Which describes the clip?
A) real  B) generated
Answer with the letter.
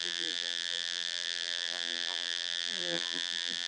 B